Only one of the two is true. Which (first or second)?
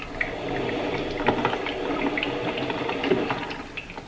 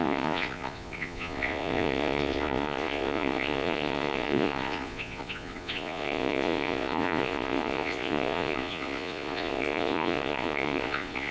first